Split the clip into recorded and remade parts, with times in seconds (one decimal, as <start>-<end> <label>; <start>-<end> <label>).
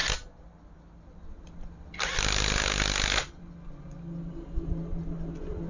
0.0-5.7 recorded